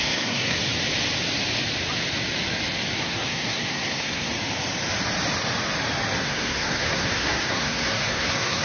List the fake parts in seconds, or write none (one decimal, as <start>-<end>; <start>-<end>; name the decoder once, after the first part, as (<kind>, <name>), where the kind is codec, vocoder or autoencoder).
0.0-0.6 (codec, SNAC); 3.0-4.3; 6.2-8.6